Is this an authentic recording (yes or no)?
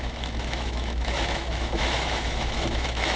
no